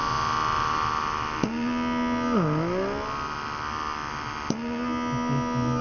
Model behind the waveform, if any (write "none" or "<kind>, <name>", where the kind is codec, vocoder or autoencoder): none